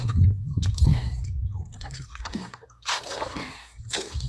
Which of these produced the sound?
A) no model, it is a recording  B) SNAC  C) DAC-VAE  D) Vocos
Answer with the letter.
B